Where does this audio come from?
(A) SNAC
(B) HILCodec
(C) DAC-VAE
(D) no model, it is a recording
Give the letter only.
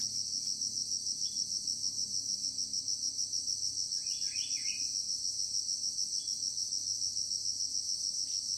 D